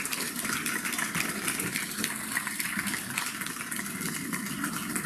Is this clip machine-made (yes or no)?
yes